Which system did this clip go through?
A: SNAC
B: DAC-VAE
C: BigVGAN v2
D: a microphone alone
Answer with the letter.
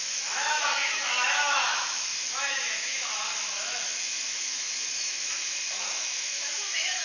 B